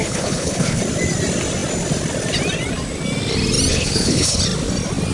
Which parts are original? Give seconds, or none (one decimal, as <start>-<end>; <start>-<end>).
0.8-3.7; 4.4-5.1